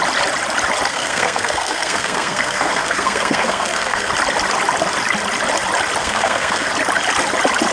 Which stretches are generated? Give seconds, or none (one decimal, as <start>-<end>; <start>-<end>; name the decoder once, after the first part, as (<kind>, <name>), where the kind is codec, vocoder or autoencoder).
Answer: 0.9-4.1 (codec, SNAC); 6.0-6.7